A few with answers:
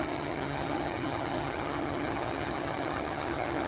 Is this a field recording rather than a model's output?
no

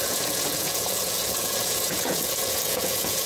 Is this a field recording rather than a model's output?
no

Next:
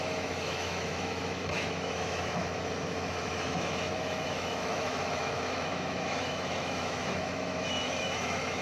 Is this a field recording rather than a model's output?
no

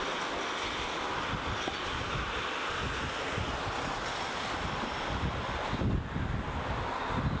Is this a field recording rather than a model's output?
yes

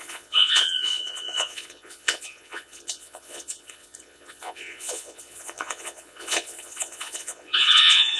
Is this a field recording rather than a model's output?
no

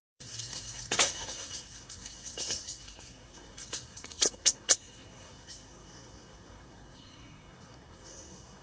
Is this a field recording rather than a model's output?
no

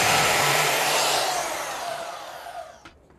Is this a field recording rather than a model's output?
no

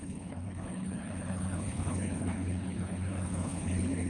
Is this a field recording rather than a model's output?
no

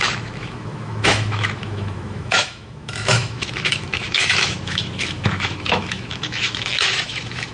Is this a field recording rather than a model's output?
no